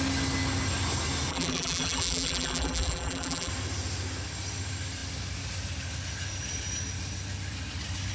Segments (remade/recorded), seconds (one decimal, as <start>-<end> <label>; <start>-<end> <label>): 0.0-1.3 recorded; 1.3-3.5 remade; 3.5-8.1 recorded